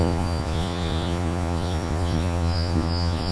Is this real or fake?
fake